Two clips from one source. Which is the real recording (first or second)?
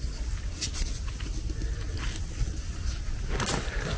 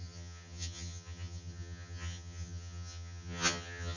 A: first